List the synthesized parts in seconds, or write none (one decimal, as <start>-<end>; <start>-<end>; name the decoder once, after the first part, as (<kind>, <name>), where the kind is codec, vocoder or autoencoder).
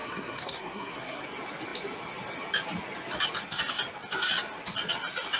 0.0-1.2 (codec, SNAC)